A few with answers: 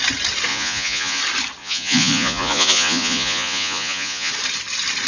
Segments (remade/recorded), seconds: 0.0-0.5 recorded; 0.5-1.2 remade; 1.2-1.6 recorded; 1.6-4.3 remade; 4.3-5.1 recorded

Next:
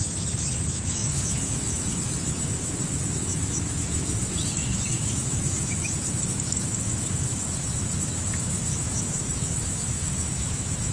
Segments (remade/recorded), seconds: 0.0-10.9 remade